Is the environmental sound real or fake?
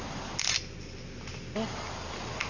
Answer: real